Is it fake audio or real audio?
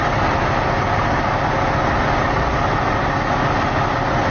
real